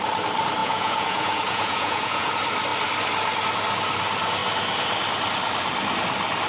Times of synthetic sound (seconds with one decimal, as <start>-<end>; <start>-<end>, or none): 0.6-2.3